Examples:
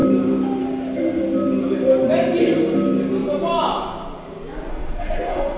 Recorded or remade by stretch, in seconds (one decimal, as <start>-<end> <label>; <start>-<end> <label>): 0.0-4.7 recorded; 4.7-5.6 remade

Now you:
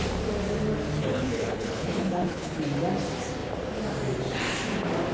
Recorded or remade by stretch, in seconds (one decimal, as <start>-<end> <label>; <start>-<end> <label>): 0.0-1.0 recorded; 1.0-2.6 remade; 2.6-5.1 recorded

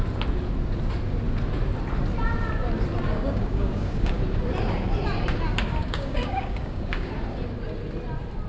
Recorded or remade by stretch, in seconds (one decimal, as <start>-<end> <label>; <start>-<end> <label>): 0.0-3.1 recorded; 3.1-4.2 remade; 4.2-5.8 recorded; 5.8-7.1 remade; 7.1-8.5 recorded